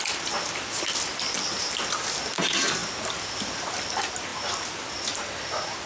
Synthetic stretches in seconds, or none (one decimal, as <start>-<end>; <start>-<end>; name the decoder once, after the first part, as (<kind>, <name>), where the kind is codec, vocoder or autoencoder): 0.0-2.8 (vocoder, BigVGAN v2); 3.5-4.3; 4.9-5.9